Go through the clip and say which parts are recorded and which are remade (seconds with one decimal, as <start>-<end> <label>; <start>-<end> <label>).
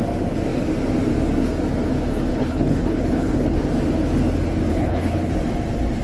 0.0-2.3 recorded; 2.3-3.6 remade; 3.6-4.7 recorded; 4.7-5.3 remade; 5.3-6.0 recorded